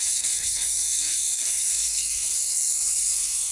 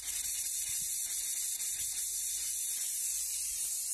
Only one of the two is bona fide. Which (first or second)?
second